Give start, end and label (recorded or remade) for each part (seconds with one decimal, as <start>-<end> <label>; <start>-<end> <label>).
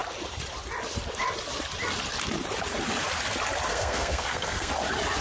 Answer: 0.0-3.7 recorded; 3.7-4.7 remade; 4.7-5.2 recorded